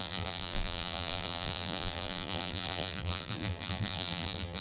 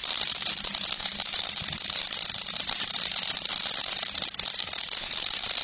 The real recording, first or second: second